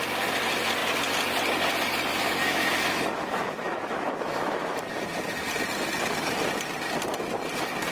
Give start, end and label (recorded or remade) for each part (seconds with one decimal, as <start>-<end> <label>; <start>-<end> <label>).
0.0-2.1 recorded; 2.1-4.8 remade; 4.8-7.9 recorded